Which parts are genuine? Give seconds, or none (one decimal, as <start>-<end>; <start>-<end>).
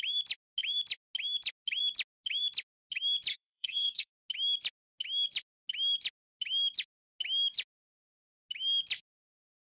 0.0-3.3; 4.1-9.7